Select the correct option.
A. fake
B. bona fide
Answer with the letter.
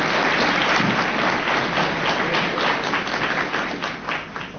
B